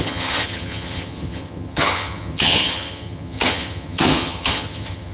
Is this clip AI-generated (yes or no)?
yes